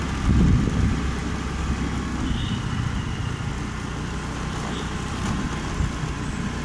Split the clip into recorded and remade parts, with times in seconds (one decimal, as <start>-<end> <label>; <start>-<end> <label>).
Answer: 0.0-6.6 recorded